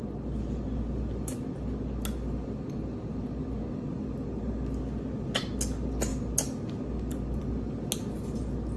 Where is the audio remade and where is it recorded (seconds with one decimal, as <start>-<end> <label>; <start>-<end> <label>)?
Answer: 0.0-8.8 recorded